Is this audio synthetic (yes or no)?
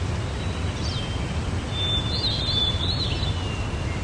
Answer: no